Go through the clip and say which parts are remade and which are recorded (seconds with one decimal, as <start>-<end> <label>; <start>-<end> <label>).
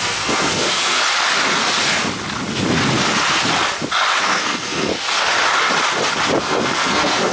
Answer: 0.0-1.0 remade; 1.0-4.2 recorded; 4.2-4.9 remade; 4.9-6.4 recorded; 6.4-7.3 remade